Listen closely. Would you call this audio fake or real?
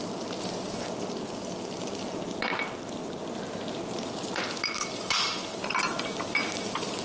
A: real